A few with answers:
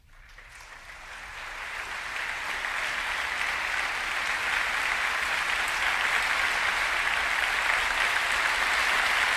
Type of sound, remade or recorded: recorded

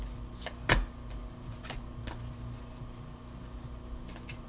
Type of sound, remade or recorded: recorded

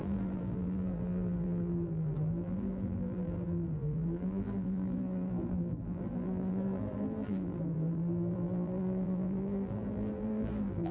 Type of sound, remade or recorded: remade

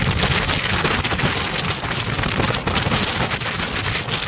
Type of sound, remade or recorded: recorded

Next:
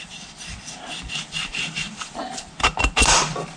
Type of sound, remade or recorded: recorded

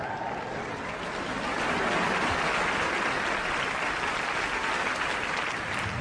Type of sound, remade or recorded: recorded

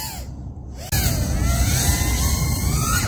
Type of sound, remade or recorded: recorded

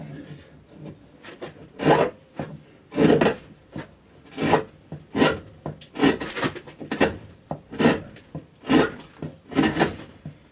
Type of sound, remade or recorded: recorded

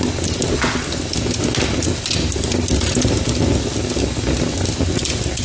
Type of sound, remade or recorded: recorded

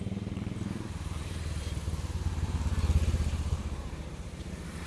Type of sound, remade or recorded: remade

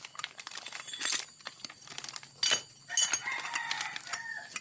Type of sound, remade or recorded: recorded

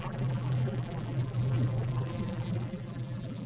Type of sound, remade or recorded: remade